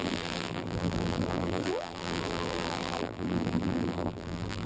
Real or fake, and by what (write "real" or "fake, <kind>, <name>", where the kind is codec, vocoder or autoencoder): fake, vocoder, BigVGAN v2